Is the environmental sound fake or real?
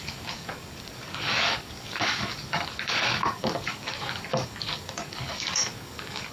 fake